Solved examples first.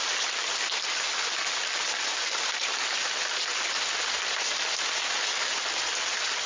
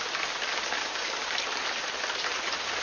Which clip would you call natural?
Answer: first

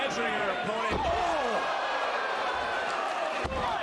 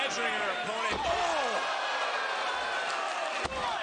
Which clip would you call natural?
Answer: second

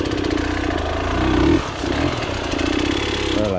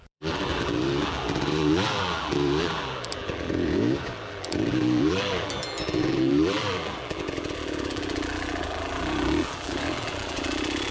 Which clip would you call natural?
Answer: first